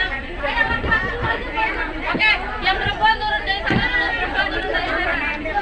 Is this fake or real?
fake